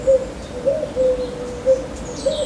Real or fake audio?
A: real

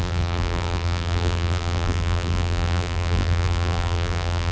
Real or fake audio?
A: fake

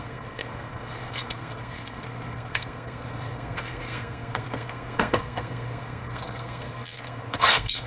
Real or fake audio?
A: fake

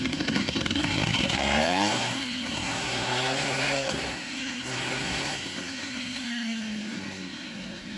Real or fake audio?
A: fake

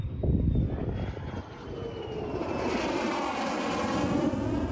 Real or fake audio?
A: real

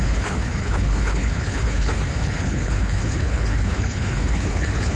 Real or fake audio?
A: fake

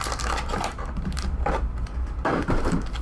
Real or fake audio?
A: fake